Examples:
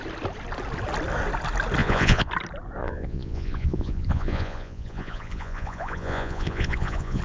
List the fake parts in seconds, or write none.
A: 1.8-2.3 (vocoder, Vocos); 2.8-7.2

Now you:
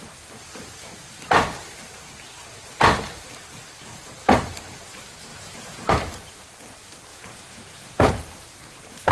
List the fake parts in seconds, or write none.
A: 5.3-5.9 (vocoder, Vocos); 7.1-8.1

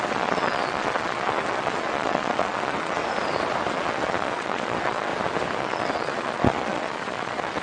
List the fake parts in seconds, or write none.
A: 0.0-3.0 (vocoder, Vocos); 3.7-5.1; 5.6-7.6